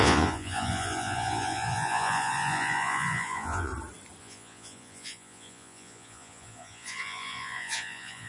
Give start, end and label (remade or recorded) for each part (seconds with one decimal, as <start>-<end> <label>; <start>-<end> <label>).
0.0-3.7 remade; 3.7-4.2 recorded; 4.2-8.3 remade

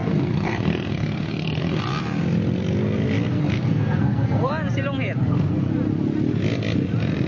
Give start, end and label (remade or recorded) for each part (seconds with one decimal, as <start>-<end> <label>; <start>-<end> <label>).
0.0-1.8 remade; 1.8-3.3 recorded; 3.3-4.5 remade; 4.5-5.2 recorded; 5.2-5.7 remade; 5.7-7.3 recorded

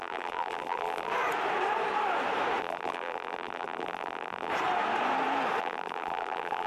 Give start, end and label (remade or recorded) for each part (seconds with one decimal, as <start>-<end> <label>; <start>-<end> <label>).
0.0-1.1 remade; 1.1-2.6 recorded; 2.6-4.5 remade; 4.5-5.6 recorded; 5.6-6.7 remade